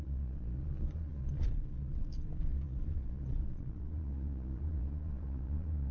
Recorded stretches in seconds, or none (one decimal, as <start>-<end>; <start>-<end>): none